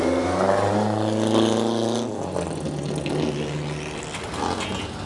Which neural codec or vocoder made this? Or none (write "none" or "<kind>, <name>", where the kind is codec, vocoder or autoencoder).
none